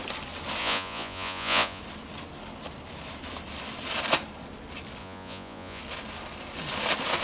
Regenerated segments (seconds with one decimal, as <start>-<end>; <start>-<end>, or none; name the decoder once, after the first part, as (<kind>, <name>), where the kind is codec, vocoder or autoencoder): 0.6-1.8 (vocoder, Vocos); 5.0-5.8